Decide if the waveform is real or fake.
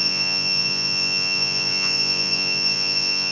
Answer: fake